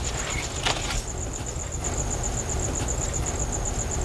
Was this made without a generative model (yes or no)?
yes